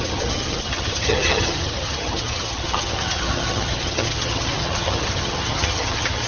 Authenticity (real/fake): fake